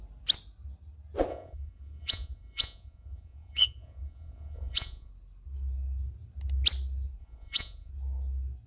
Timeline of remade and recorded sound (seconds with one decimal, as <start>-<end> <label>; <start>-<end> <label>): 0.0-1.3 recorded; 1.3-5.1 remade; 5.1-7.2 recorded; 7.2-7.9 remade; 7.9-8.7 recorded